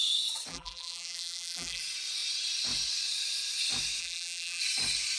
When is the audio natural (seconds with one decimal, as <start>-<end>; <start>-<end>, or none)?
0.0-0.5; 1.8-4.0; 4.6-5.2